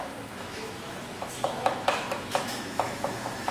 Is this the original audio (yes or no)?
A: no